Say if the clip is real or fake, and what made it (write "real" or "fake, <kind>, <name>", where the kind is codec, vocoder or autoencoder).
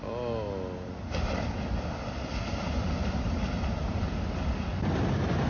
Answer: real